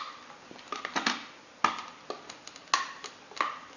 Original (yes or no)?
yes